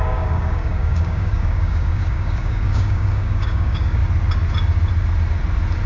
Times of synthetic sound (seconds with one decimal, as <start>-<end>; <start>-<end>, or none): 0.0-4.0